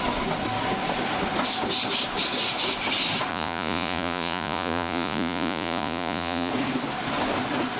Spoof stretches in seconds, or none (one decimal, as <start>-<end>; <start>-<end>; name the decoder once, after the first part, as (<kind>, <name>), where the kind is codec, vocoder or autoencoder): 3.3-6.5 (vocoder, Vocos)